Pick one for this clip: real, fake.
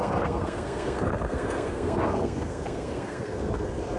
fake